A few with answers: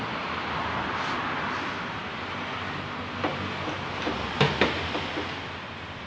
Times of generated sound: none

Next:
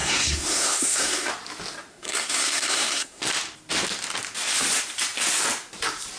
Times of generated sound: 0.0-1.3; 1.9-3.2

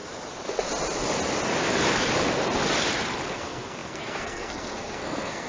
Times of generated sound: 3.3-5.5